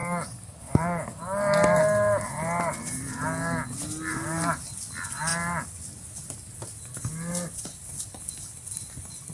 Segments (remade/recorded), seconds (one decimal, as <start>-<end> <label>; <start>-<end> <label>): 0.0-1.2 remade; 1.2-9.3 recorded